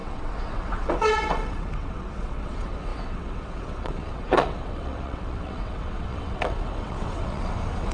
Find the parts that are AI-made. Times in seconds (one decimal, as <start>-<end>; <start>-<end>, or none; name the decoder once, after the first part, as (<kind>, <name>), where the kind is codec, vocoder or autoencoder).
0.0-7.9 (vocoder, WaveNeXt)